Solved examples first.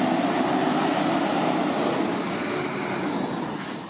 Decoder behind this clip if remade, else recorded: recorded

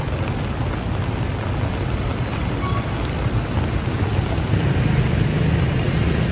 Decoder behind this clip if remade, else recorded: recorded